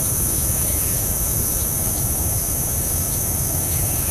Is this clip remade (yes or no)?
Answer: yes